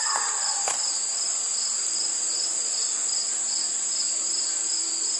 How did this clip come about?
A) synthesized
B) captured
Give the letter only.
B